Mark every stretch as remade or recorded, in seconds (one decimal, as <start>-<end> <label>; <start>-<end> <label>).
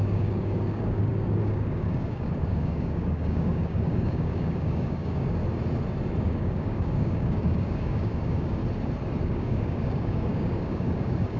0.0-5.4 remade; 5.4-6.2 recorded; 6.2-8.6 remade; 8.6-9.2 recorded; 9.2-11.4 remade